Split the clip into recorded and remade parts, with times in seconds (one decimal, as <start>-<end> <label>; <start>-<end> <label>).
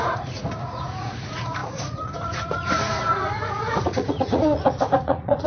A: 0.0-5.5 remade